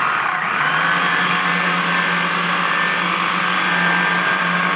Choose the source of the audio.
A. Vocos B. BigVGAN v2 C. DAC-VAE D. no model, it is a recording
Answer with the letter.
D